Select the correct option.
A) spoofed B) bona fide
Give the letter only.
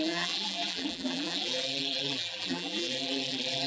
A